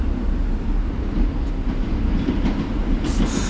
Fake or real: real